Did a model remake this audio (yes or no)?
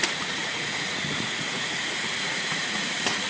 yes